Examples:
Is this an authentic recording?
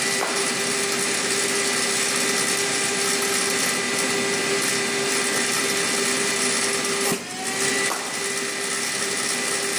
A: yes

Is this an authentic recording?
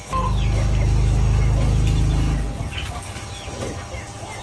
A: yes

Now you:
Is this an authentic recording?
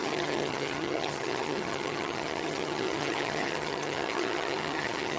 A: no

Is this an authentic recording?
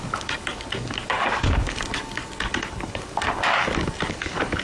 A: no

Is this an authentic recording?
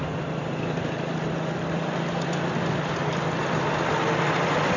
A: yes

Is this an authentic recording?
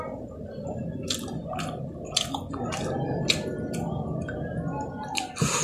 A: yes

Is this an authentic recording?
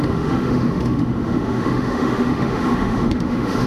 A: no